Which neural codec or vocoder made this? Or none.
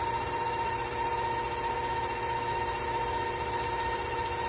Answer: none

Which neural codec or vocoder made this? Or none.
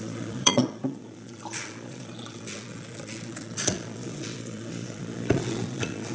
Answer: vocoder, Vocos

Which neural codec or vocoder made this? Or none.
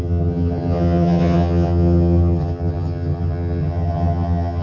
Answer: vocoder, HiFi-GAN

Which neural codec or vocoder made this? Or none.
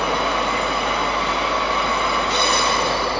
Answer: none